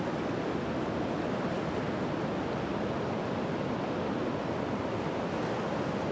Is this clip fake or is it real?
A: real